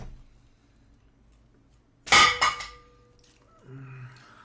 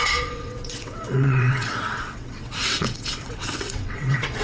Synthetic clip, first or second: second